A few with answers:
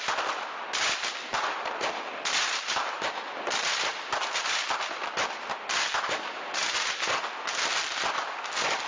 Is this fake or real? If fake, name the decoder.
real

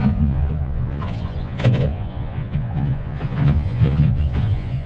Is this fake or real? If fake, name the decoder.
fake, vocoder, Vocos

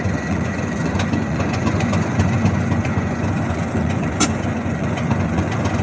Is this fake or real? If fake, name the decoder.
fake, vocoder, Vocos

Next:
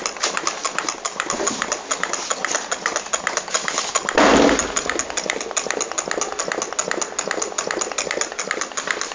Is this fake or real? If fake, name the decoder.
real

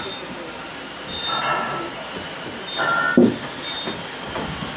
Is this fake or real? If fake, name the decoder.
real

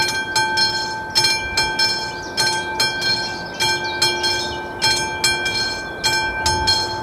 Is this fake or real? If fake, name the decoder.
real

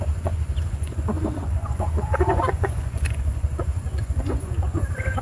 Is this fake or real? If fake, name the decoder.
fake, vocoder, Vocos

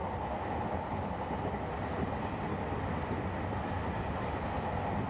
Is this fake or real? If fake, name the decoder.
real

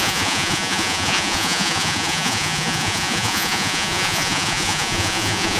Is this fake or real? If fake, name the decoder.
fake, vocoder, Vocos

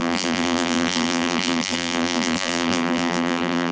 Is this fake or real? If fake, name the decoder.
fake, vocoder, BigVGAN v2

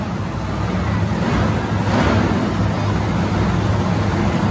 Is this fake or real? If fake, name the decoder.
real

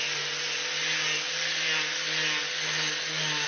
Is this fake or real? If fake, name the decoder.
real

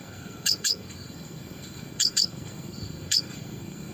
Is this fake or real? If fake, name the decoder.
fake, codec, SNAC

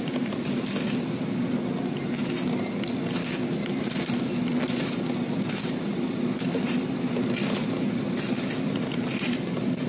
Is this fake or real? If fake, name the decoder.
real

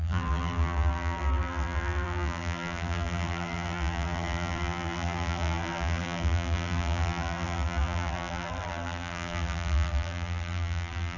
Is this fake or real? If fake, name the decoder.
fake, vocoder, BigVGAN v2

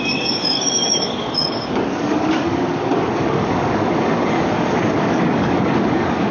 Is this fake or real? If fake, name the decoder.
fake, codec, DAC